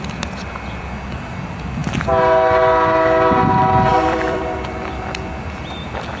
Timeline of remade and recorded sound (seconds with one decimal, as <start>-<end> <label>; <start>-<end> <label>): 0.0-3.9 recorded; 3.9-4.4 remade; 4.4-6.2 recorded